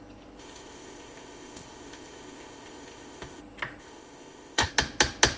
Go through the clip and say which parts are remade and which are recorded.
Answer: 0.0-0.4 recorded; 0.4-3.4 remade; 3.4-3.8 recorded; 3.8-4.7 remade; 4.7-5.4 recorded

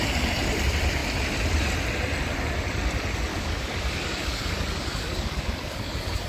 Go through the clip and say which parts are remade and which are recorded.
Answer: 0.0-3.3 recorded; 3.3-6.3 remade

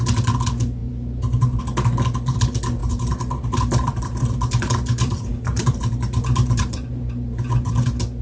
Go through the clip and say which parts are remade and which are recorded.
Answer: 0.0-0.8 recorded; 0.8-1.6 remade; 1.6-2.8 recorded; 2.8-7.7 remade; 7.7-8.2 recorded

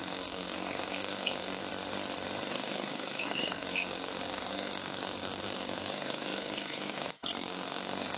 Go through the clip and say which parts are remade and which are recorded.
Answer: 0.0-1.6 remade; 1.6-2.5 recorded; 2.5-8.2 remade